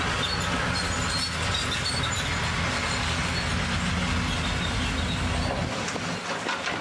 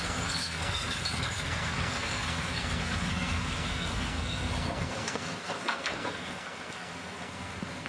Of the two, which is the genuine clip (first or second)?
first